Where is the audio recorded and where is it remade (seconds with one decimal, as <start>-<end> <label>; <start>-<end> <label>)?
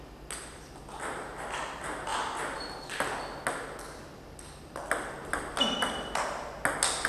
0.0-7.1 recorded